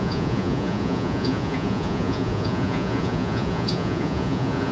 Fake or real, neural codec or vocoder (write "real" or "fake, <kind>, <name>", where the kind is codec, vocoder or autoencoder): fake, vocoder, Vocos